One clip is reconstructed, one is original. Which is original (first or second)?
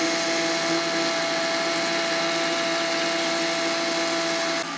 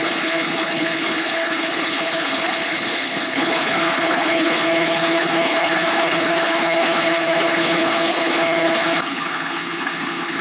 first